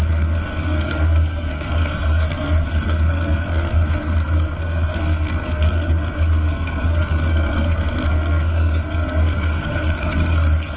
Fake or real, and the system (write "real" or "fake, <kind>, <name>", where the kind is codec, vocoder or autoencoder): fake, codec, SNAC